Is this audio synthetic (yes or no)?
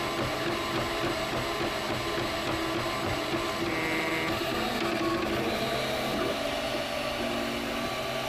no